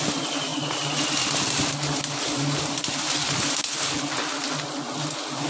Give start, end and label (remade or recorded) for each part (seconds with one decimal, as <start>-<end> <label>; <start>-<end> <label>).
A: 0.0-5.5 recorded